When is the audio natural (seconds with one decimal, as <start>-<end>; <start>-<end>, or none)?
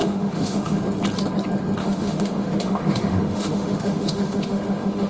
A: 0.8-1.8